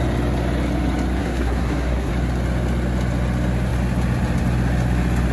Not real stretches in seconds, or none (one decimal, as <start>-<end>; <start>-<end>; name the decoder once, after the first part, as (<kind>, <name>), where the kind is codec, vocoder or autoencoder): 1.2-2.1 (codec, SNAC)